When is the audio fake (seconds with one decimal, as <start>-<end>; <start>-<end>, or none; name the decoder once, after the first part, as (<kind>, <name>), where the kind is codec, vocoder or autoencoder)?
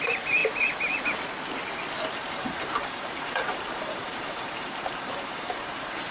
0.0-0.4 (vocoder, BigVGAN v2); 2.1-6.1